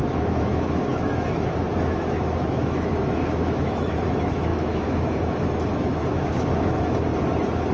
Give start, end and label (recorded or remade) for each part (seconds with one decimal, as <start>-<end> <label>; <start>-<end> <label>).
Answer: 0.0-7.1 remade; 7.1-7.7 recorded